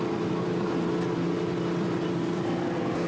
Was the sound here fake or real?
real